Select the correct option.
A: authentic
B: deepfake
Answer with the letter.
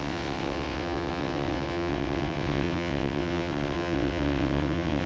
B